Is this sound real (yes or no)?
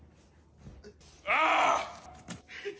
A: yes